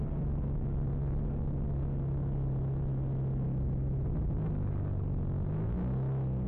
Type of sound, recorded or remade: recorded